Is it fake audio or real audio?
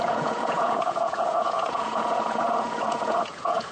fake